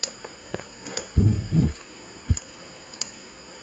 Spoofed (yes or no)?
yes